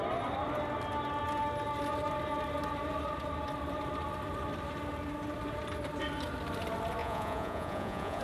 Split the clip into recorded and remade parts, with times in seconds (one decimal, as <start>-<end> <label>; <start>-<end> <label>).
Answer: 0.0-7.0 recorded; 7.0-8.2 remade